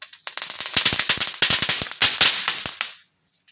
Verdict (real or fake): real